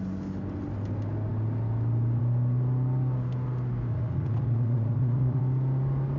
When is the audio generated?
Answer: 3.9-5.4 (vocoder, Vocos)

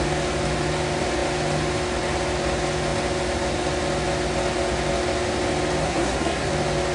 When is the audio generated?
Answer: 5.8-6.5 (codec, SNAC)

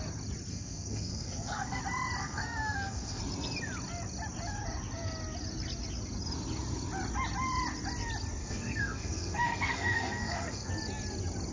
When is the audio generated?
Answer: 0.5-1.8 (codec, SNAC); 2.2-3.2; 8.4-10.7

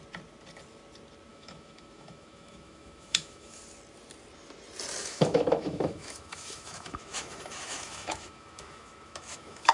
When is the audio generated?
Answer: 1.3-3.6 (autoencoder, DAC-VAE); 5.0-9.7

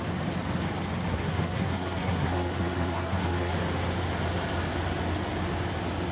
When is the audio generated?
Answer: 1.1-3.5 (codec, SNAC)

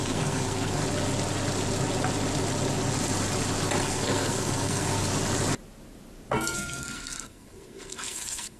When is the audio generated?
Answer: 0.0-0.8 (codec, SNAC); 3.8-5.1; 6.3-8.6

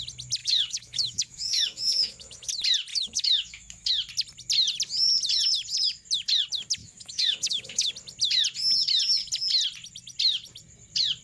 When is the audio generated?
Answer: 0.4-2.5 (autoencoder, DAC-VAE); 2.9-3.9; 6.8-7.9